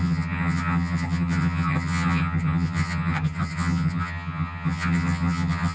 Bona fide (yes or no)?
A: no